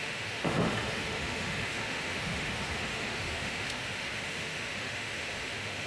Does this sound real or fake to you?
fake